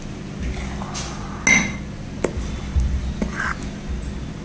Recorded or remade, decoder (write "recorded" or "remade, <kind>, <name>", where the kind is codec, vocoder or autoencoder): recorded